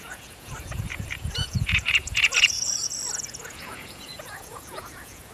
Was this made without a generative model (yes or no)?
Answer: no